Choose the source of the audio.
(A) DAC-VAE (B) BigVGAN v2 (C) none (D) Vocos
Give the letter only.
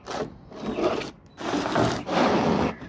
C